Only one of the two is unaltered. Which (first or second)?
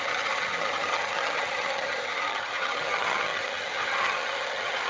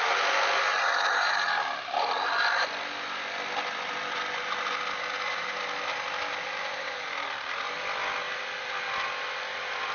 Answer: second